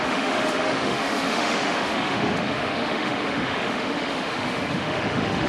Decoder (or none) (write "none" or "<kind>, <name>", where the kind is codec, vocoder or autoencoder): autoencoder, DAC-VAE